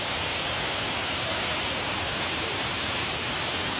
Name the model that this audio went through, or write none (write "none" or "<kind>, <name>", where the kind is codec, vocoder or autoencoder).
none